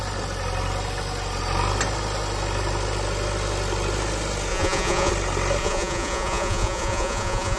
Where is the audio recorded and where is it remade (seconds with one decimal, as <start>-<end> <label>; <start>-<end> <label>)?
0.0-4.5 recorded; 4.5-5.1 remade; 5.1-5.6 recorded; 5.6-7.6 remade